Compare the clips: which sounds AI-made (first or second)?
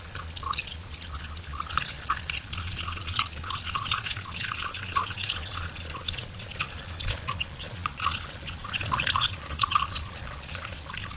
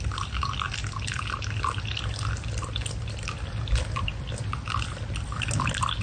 first